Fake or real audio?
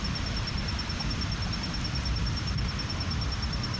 real